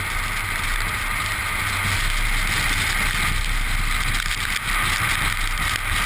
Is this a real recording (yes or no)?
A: yes